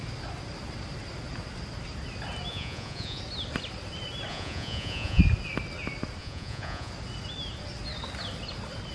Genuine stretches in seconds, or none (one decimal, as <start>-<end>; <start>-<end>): 0.0-2.5; 3.2-4.3; 5.2-6.2; 6.9-8.9